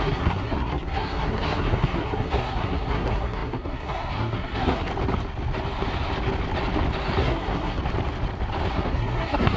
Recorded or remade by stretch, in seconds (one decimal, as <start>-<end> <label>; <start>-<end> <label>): 0.0-4.9 remade; 4.9-7.2 recorded; 7.2-7.8 remade; 7.8-8.7 recorded; 8.7-9.6 remade